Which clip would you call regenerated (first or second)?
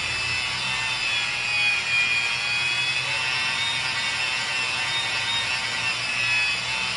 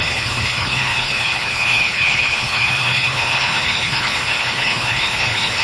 second